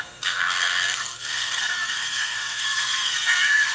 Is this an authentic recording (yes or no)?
no